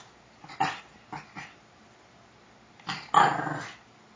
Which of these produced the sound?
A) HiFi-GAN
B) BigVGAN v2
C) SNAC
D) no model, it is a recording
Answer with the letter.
D